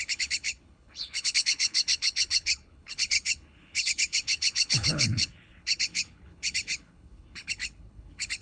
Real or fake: fake